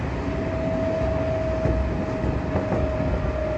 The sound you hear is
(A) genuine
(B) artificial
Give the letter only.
A